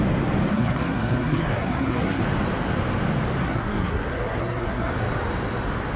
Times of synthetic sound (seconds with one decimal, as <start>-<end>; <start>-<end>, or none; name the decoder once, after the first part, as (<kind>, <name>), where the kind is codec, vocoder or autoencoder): 0.5-2.2 (codec, SNAC); 3.4-4.9